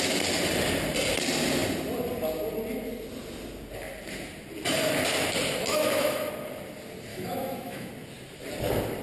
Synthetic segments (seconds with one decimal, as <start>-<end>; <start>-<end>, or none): 5.7-6.3; 7.1-7.9